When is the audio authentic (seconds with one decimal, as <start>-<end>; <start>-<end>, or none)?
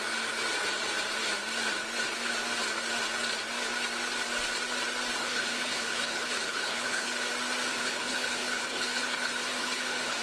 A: 0.0-5.2; 7.1-7.7